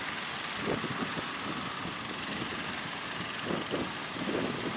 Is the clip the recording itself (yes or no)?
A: yes